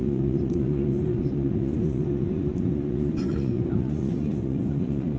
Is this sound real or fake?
fake